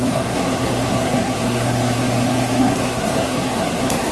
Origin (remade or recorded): remade